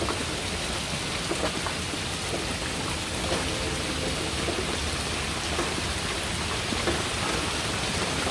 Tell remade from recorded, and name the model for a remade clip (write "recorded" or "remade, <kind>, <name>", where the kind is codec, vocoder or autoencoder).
recorded